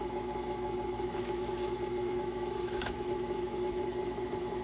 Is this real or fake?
fake